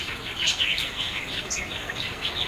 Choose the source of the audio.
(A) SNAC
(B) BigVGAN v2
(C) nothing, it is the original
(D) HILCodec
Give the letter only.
A